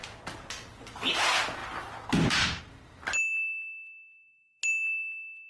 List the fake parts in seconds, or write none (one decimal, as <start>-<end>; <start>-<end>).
1.6-2.6